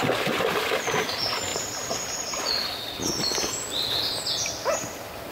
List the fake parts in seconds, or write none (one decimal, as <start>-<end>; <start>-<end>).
none

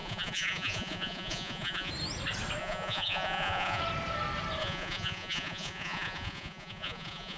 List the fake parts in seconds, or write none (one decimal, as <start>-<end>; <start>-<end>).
0.0-1.9; 2.6-3.8; 4.6-7.4

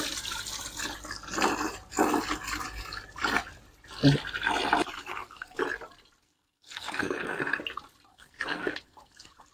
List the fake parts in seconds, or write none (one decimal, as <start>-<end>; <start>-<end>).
5.1-5.6; 6.2-7.6; 8.1-9.5

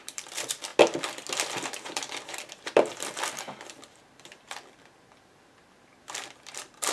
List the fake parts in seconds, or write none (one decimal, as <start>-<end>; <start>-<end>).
0.0-0.7; 2.5-6.9

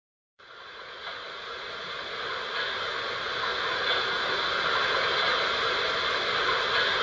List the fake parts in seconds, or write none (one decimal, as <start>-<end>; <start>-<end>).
0.0-2.3; 3.5-4.5

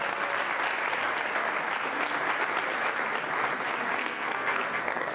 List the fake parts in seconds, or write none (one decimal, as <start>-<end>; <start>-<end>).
4.0-5.1

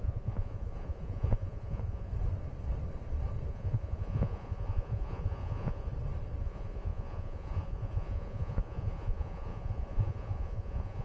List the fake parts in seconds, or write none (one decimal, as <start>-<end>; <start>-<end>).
0.0-2.1; 3.5-5.9; 6.4-11.0

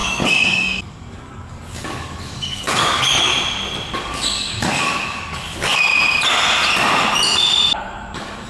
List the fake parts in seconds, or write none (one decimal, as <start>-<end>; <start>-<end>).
0.0-3.3; 4.0-5.9; 7.8-8.5